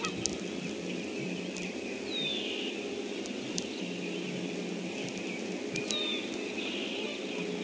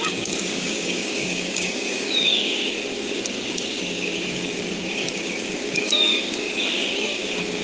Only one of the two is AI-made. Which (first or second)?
second